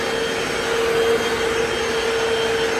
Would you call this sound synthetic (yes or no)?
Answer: no